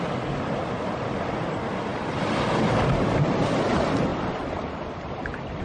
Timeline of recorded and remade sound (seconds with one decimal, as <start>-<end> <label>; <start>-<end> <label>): 0.0-4.1 recorded; 4.1-5.6 remade